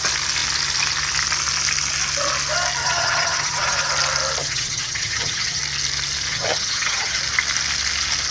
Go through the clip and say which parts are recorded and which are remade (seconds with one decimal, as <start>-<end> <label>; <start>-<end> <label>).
0.0-2.8 recorded; 2.8-3.9 remade; 3.9-4.4 recorded; 4.4-5.6 remade; 5.6-6.3 recorded; 6.3-7.2 remade; 7.2-8.3 recorded

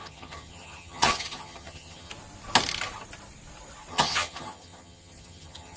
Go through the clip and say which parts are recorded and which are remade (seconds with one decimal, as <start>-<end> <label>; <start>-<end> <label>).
0.0-2.1 remade; 2.1-3.9 recorded; 3.9-5.8 remade

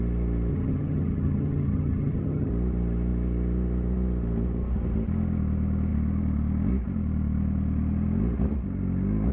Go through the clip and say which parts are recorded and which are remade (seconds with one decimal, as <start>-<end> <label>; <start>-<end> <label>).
0.0-0.5 recorded; 0.5-2.5 remade; 2.5-9.3 recorded

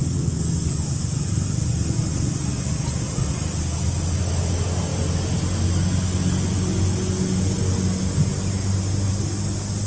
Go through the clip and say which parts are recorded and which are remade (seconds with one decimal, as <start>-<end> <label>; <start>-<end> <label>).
0.0-9.9 recorded

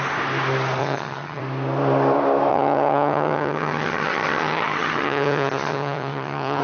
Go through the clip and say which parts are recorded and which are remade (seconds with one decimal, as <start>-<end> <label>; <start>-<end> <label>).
0.0-0.8 recorded; 0.8-1.4 remade; 1.4-2.5 recorded; 2.5-6.6 remade

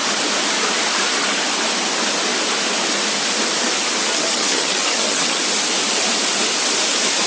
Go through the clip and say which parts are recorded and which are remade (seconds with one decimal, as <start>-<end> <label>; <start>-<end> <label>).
0.0-4.1 recorded; 4.1-5.4 remade; 5.4-7.3 recorded

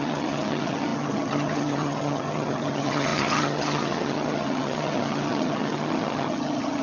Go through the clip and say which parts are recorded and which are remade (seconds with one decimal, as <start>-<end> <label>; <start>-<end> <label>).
0.0-6.8 remade

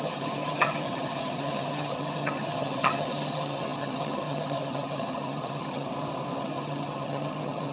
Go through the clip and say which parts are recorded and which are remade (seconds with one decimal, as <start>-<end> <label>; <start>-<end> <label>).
0.0-5.9 remade; 5.9-6.4 recorded; 6.4-7.7 remade